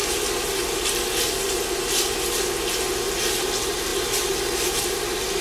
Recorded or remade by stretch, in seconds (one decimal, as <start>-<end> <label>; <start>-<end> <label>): 0.0-5.4 recorded